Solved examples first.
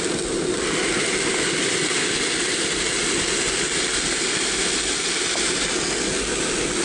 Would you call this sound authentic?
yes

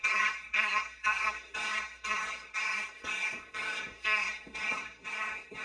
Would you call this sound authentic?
no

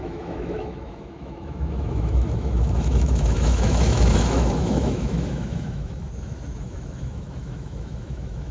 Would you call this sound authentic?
no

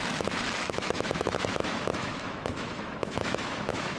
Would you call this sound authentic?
no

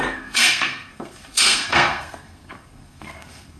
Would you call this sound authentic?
no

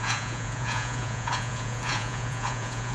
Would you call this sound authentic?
no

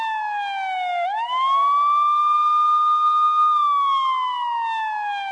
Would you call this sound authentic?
yes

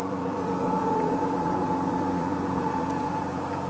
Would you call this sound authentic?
no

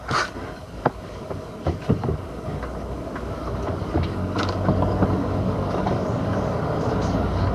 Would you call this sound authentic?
no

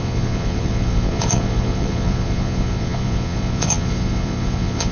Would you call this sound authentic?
no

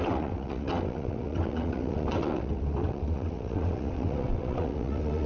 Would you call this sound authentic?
no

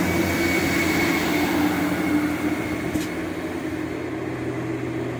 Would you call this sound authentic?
yes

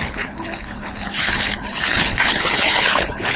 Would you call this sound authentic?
no